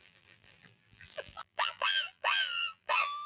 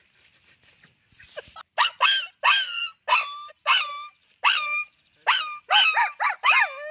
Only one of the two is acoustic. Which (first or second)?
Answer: second